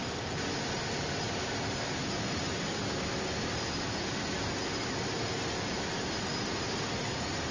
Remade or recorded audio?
recorded